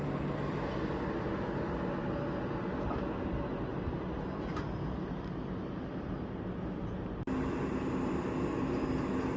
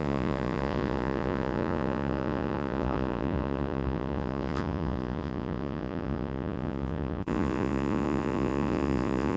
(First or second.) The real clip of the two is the first